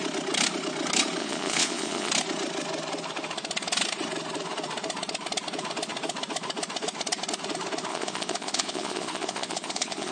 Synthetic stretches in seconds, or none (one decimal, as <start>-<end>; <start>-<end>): 1.2-2.1; 7.9-10.1